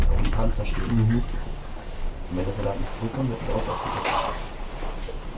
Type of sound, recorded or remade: recorded